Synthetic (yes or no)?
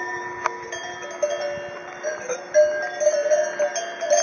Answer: no